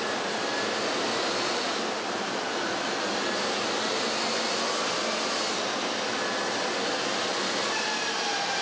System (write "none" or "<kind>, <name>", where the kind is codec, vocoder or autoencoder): none